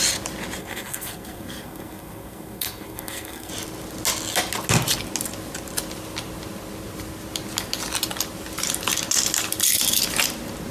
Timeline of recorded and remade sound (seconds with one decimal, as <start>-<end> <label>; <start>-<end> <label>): 0.0-0.6 recorded; 0.6-3.5 remade; 3.5-10.7 recorded